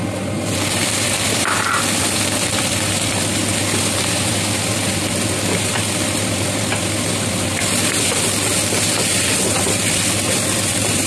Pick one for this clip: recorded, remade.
recorded